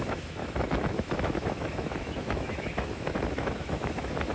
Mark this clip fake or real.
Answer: fake